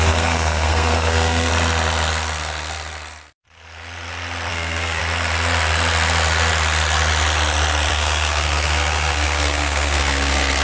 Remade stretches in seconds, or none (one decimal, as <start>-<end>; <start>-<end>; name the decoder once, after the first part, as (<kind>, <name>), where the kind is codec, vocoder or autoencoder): 0.0-1.5 (codec, SNAC); 4.5-5.0; 7.9-10.6